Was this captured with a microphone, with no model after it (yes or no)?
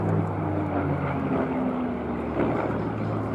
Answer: yes